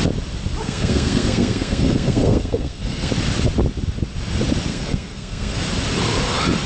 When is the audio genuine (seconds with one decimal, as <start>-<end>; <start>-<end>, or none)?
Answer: 0.0-0.6; 3.1-4.7; 5.6-6.7